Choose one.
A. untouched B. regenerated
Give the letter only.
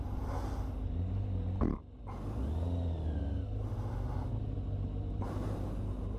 A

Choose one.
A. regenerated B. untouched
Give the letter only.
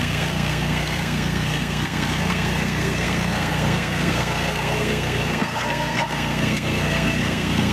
A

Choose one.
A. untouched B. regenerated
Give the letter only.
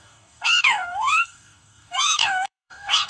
B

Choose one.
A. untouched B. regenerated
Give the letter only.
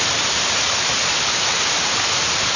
A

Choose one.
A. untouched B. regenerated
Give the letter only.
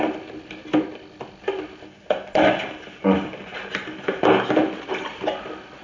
A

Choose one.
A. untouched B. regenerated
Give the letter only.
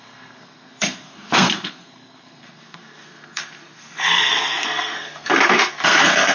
B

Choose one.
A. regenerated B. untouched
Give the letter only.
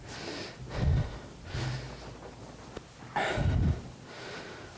B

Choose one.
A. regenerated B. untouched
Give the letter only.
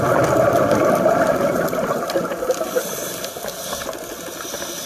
A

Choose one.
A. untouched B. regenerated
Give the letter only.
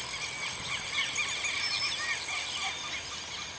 A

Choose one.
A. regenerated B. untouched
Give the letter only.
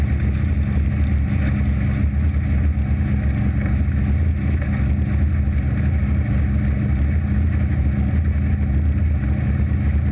B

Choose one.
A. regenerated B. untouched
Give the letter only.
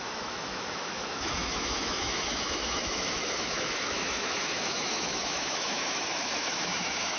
A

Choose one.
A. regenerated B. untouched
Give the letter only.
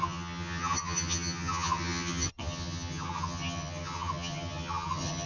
A